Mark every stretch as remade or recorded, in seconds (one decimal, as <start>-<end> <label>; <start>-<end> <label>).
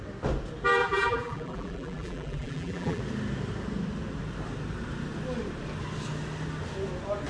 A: 0.0-0.8 recorded; 0.8-3.0 remade; 3.0-7.3 recorded